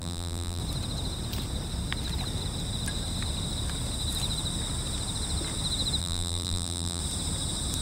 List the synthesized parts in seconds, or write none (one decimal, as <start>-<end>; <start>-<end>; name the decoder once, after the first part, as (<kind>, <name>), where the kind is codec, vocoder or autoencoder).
0.0-0.6 (vocoder, BigVGAN v2); 6.0-7.0